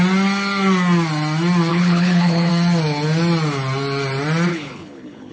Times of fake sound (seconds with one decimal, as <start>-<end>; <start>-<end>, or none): 1.7-2.5; 4.5-5.3